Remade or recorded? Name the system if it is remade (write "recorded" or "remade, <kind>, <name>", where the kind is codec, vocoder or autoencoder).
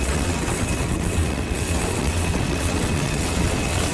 remade, vocoder, WaveNeXt